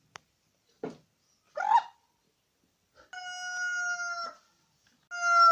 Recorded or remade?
recorded